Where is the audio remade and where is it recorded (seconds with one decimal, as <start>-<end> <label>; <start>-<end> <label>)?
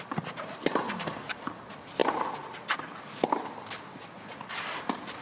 0.0-5.2 recorded